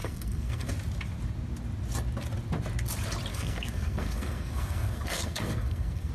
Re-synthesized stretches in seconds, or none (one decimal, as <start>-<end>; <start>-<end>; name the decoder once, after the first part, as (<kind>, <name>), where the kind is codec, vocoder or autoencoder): 0.0-0.7 (codec, SNAC); 3.3-6.1